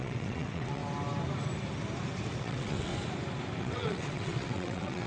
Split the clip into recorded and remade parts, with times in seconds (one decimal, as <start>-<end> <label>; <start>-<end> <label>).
0.0-0.8 remade; 0.8-2.4 recorded; 2.4-2.9 remade; 2.9-3.6 recorded; 3.6-5.1 remade